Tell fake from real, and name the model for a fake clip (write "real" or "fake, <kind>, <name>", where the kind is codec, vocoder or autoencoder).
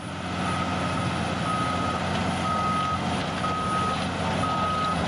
real